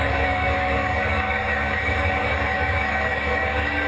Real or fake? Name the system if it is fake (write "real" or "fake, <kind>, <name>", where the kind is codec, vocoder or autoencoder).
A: fake, codec, DAC